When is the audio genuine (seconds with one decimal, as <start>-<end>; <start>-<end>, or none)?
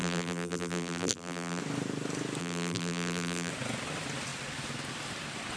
1.6-2.4; 3.5-5.6